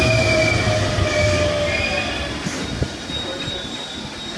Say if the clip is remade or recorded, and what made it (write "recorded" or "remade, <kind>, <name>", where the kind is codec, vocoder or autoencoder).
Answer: recorded